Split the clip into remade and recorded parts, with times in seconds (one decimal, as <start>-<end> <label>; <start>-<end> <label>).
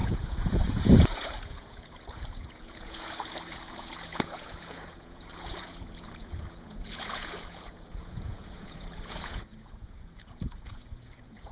0.0-11.5 remade